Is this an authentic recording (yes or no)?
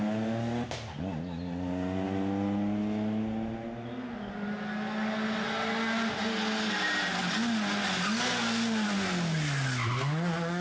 yes